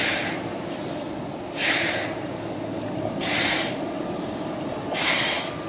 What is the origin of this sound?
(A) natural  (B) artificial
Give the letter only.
A